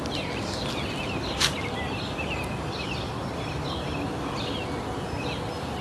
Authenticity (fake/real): real